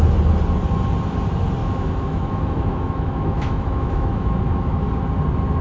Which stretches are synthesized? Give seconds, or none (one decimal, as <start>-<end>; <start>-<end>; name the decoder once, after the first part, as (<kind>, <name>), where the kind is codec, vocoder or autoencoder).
1.6-4.9 (autoencoder, DAC-VAE)